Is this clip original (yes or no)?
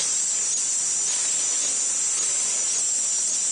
no